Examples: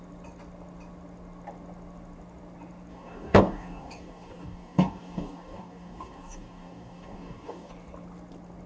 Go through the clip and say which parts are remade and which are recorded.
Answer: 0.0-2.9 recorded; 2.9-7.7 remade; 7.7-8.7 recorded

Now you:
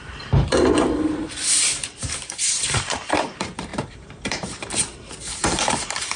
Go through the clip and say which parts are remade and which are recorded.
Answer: 0.0-6.2 remade

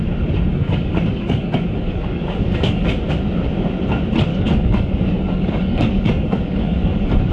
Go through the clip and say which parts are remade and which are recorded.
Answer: 0.0-0.5 recorded; 0.5-2.9 remade; 2.9-4.3 recorded; 4.3-7.3 remade

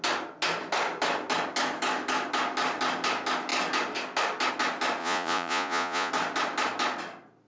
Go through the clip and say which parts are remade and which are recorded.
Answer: 0.0-5.0 recorded; 5.0-6.1 remade; 6.1-7.5 recorded

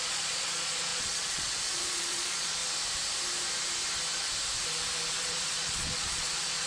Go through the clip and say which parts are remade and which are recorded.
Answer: 0.0-2.6 remade; 2.6-5.1 recorded; 5.1-6.7 remade

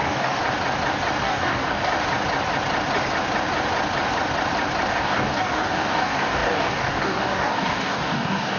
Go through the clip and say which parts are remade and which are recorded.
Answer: 0.0-0.4 remade; 0.4-1.2 recorded; 1.2-1.9 remade; 1.9-4.9 recorded; 4.9-8.6 remade

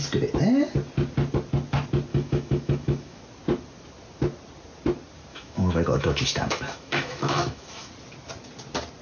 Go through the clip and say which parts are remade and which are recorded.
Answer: 0.0-2.1 recorded; 2.1-3.2 remade; 3.2-5.3 recorded; 5.3-7.9 remade; 7.9-9.0 recorded

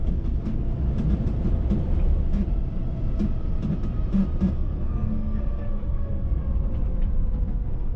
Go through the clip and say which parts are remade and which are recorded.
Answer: 0.0-0.7 remade; 0.7-4.5 recorded; 4.5-6.4 remade; 6.4-7.4 recorded; 7.4-8.0 remade